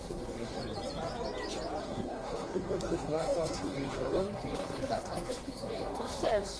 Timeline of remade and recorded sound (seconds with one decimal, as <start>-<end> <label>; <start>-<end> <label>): 0.0-0.6 remade; 0.6-1.8 recorded; 1.8-6.6 remade